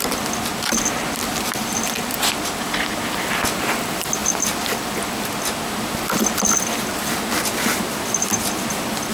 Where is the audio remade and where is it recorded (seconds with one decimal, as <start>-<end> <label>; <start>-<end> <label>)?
0.0-9.1 recorded